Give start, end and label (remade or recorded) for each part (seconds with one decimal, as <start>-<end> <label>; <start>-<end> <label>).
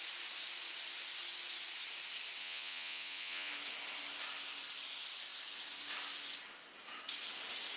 0.0-2.4 recorded; 2.4-3.5 remade; 3.5-7.8 recorded